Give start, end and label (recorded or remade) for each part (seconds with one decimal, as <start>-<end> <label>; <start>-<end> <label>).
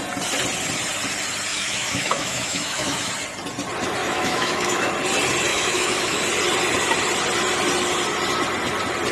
0.0-1.5 recorded; 1.5-3.1 remade; 3.1-4.0 recorded; 4.0-4.9 remade; 4.9-5.5 recorded; 5.5-6.2 remade; 6.2-9.1 recorded